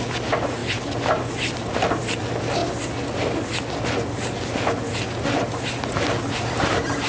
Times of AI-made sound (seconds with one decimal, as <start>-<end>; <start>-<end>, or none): none